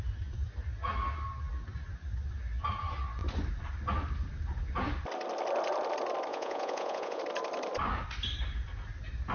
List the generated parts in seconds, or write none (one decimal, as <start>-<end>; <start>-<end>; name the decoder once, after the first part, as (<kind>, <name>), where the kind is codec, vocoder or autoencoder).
6.3-7.2 (vocoder, Vocos)